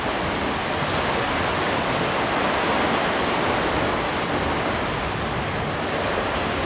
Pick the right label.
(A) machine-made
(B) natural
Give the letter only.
B